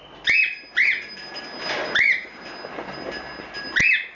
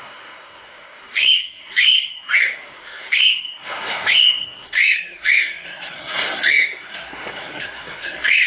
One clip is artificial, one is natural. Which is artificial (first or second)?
second